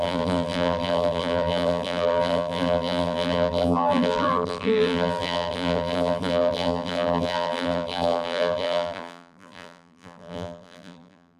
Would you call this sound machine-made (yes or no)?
yes